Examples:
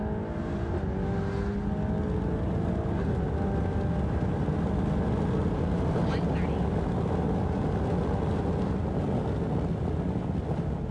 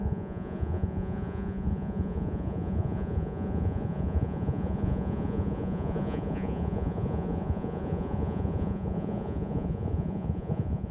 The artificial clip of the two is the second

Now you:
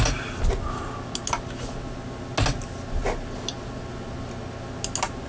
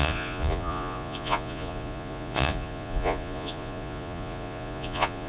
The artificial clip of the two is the second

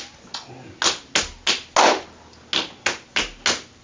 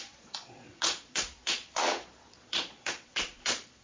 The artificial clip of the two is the second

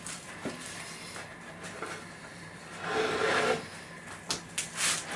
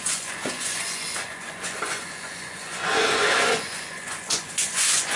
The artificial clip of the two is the second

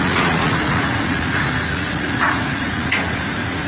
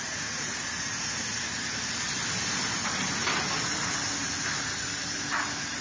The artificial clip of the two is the first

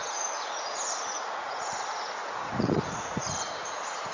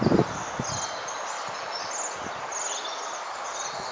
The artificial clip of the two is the first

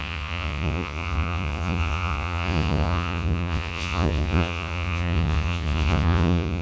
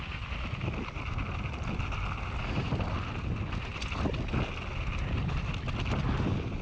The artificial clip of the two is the first